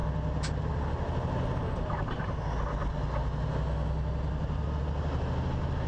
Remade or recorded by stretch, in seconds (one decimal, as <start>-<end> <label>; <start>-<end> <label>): 0.0-5.9 recorded